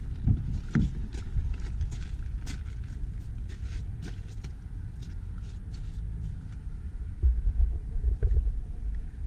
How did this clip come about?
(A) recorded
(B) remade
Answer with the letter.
B